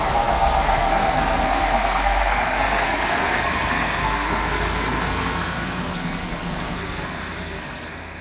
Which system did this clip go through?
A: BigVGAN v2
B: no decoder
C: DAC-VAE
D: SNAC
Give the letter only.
D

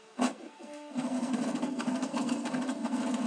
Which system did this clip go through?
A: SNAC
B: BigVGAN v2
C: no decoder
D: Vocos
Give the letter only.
A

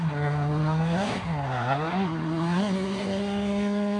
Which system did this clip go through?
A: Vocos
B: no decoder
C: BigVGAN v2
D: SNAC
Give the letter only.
D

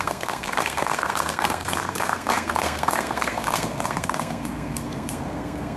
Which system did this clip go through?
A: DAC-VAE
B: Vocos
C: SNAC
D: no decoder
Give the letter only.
C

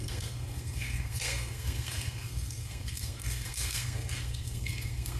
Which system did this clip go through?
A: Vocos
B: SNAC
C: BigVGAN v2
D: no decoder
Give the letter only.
B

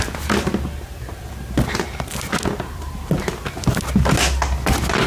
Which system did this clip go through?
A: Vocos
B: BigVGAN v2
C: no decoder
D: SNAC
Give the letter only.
C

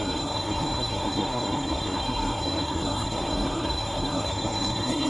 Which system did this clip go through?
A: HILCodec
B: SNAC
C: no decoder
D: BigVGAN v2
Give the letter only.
B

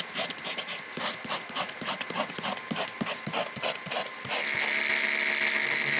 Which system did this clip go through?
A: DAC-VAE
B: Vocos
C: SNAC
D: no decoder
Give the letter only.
D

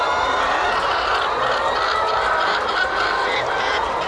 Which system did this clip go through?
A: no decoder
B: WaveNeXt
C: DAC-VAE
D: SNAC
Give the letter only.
A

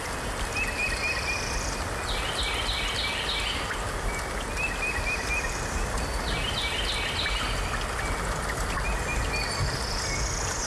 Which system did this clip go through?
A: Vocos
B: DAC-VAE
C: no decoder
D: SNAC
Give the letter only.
C